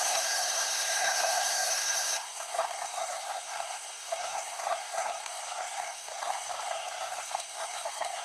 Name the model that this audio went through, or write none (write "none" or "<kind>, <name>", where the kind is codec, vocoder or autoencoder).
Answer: codec, SNAC